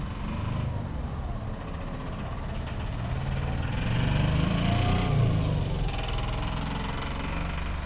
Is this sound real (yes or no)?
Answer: yes